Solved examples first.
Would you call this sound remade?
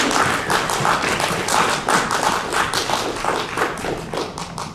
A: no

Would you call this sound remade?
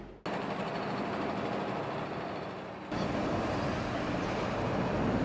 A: no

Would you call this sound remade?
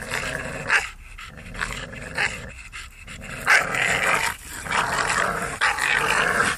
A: no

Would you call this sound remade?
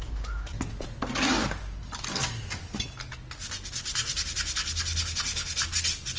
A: no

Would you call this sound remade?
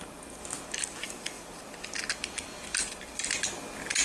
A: no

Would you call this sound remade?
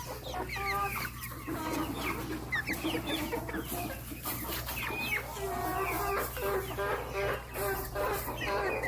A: no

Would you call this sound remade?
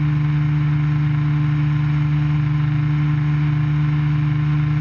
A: no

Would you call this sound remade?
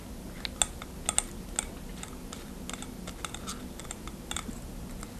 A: no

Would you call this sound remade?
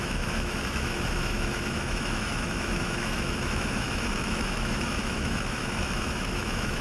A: yes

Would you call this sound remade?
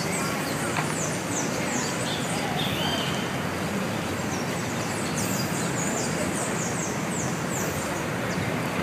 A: no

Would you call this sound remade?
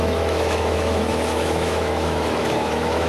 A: yes